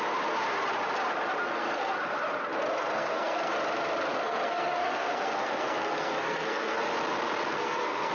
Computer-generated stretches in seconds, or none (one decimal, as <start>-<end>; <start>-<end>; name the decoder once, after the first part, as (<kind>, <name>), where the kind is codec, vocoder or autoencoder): 1.4-1.9 (codec, SNAC); 2.7-3.5; 4.1-6.8; 7.5-8.1